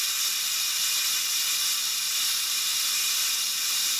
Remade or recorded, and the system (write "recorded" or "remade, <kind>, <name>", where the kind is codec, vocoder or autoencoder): recorded